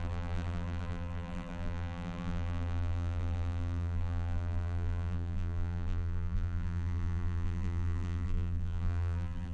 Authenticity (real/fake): fake